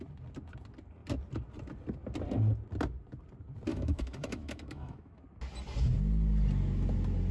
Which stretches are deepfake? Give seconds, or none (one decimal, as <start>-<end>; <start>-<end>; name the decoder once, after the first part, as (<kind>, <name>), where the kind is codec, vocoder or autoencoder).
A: 3.7-5.2 (autoencoder, DAC-VAE)